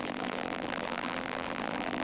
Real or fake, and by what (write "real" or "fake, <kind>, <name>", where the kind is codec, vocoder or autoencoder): fake, vocoder, BigVGAN v2